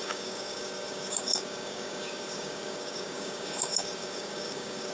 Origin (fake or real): fake